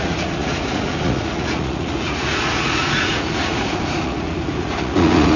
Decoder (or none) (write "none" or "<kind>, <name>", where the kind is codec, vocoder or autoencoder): vocoder, Vocos